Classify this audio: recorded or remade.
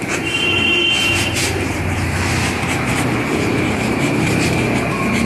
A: remade